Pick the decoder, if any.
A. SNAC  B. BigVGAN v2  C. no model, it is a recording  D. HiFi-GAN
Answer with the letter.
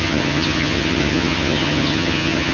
D